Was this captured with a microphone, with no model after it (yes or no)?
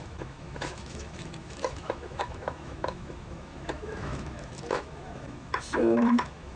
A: no